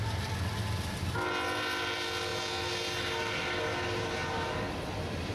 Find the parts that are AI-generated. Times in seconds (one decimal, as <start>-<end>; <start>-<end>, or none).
none